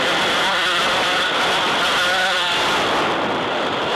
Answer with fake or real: fake